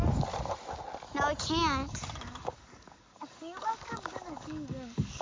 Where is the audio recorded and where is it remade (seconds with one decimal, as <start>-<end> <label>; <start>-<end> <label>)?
0.0-1.8 recorded; 1.8-5.2 remade